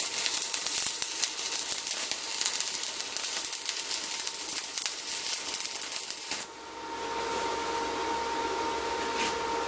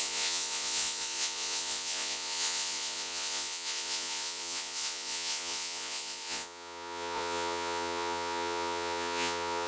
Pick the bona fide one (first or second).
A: first